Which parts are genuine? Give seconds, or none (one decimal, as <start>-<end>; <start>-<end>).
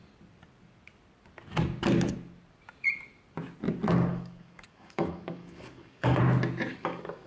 0.0-4.1; 6.2-6.7